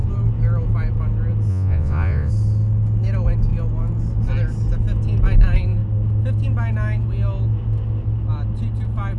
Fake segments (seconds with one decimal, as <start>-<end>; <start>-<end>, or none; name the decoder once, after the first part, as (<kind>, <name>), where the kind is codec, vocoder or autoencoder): 1.5-2.3 (vocoder, Vocos)